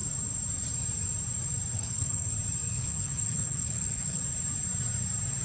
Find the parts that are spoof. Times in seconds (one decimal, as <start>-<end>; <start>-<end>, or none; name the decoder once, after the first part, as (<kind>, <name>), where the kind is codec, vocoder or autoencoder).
1.7-2.3 (codec, HILCodec); 2.7-4.2